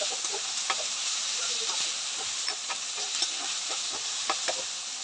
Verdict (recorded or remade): remade